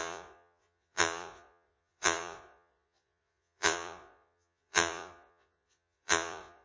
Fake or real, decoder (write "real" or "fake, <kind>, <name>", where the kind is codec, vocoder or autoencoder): fake, vocoder, Vocos